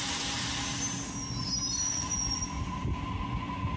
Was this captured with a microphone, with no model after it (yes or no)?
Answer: yes